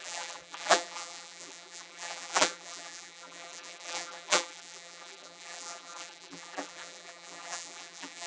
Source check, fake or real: fake